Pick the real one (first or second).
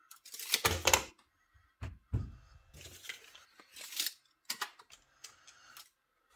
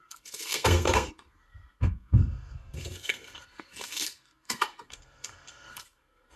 first